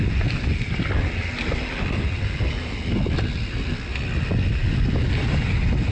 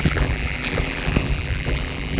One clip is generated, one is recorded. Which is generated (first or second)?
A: second